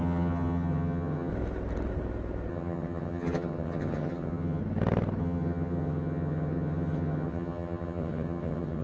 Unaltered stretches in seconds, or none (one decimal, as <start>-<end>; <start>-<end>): 1.3-2.5; 4.6-5.2